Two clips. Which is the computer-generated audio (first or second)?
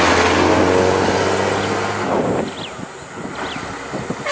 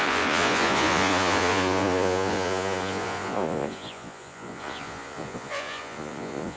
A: second